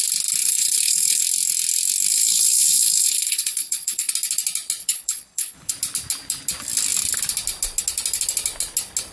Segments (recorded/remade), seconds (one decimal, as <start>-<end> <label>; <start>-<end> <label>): 0.0-0.4 recorded; 0.4-1.2 remade; 1.2-2.1 recorded; 2.1-4.1 remade; 4.1-4.8 recorded; 4.8-5.7 remade; 5.7-9.1 recorded